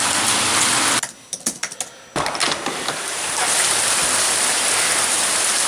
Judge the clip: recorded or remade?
recorded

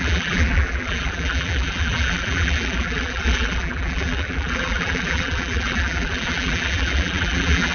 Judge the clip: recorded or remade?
remade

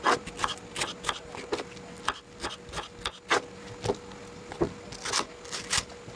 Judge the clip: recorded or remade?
recorded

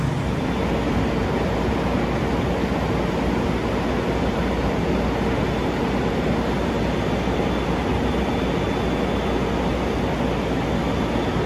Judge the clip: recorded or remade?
recorded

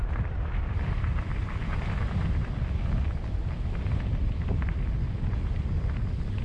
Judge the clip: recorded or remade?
remade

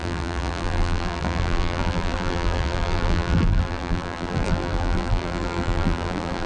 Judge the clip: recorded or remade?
remade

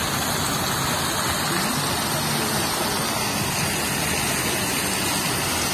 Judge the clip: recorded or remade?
recorded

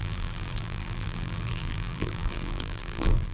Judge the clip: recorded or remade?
remade